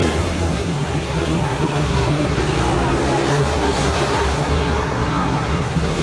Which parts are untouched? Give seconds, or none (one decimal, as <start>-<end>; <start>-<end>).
2.4-3.3